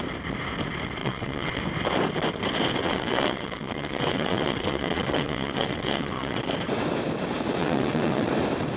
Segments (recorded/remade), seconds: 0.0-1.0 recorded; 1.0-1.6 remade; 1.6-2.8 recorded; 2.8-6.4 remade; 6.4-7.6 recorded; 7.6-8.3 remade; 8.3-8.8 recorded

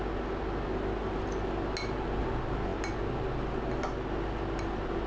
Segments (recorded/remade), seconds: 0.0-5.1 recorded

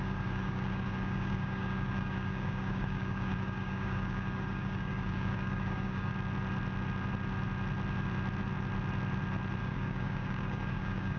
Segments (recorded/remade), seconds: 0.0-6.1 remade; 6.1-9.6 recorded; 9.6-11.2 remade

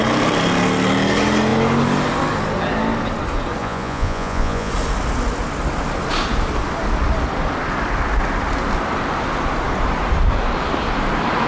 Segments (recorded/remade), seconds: 0.0-3.6 recorded; 3.6-4.7 remade; 4.7-11.5 recorded

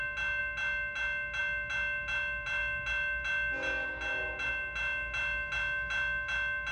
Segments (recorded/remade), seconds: 0.0-6.7 recorded

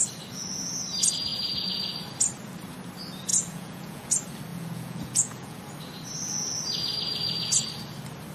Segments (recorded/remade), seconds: 0.0-3.3 recorded; 3.3-4.1 remade; 4.1-4.5 recorded; 4.5-5.6 remade; 5.6-8.3 recorded

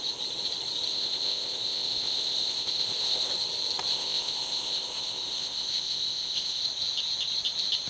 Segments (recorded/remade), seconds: 0.0-0.9 recorded; 0.9-3.3 remade; 3.3-3.9 recorded; 3.9-6.6 remade; 6.6-7.9 recorded

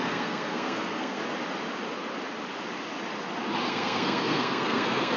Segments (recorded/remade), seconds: 0.0-1.2 remade; 1.2-3.7 recorded; 3.7-5.2 remade